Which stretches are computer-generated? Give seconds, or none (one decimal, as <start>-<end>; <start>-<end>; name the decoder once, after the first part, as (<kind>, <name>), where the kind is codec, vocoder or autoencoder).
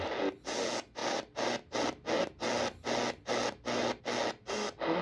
none